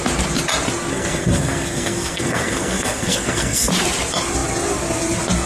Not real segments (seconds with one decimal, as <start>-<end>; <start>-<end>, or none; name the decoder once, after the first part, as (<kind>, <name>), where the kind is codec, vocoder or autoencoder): 0.9-3.7 (codec, SNAC)